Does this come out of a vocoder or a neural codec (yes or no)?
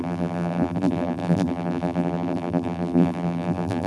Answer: yes